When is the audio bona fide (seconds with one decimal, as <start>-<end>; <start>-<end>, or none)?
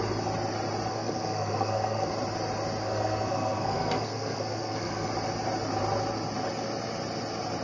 0.0-0.9; 2.1-2.8; 5.1-7.6